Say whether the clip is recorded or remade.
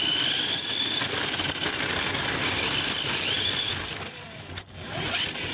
recorded